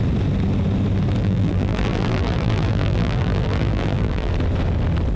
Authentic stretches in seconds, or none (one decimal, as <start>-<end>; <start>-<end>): 0.0-1.2; 4.3-5.2